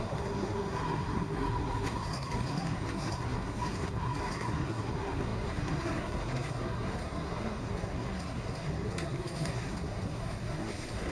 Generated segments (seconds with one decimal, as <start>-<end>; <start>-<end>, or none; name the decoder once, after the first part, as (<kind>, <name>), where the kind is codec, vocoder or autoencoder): 0.0-11.1 (codec, SNAC)